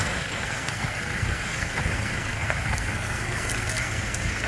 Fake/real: fake